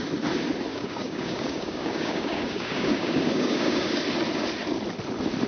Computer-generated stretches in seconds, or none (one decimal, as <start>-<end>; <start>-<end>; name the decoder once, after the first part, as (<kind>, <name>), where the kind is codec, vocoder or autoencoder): 0.7-4.0 (codec, DAC)